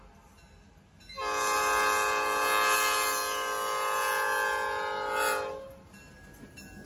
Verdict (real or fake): real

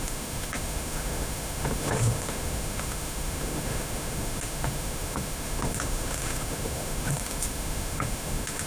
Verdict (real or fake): fake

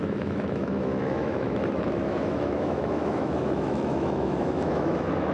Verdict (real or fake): fake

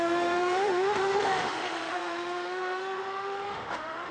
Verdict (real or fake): fake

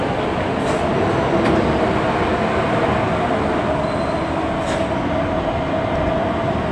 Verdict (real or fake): real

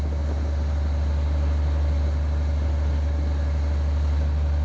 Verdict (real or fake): real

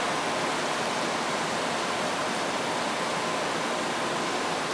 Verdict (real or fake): real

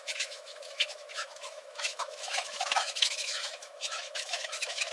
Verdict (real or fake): fake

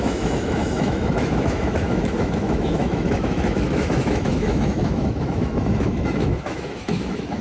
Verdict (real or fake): fake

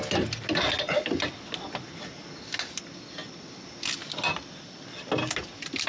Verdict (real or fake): real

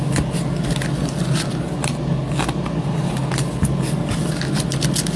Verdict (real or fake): real